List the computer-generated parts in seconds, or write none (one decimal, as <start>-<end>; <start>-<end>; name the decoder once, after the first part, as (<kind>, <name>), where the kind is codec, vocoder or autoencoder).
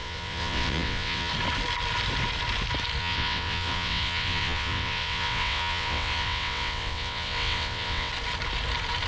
0.0-1.3 (vocoder, WaveNeXt); 3.0-8.1